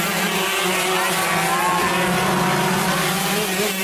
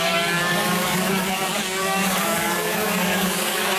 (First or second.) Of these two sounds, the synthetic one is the second